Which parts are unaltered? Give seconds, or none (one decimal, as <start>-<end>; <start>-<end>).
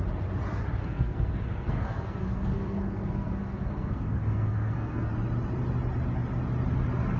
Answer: 0.0-0.8; 5.1-7.2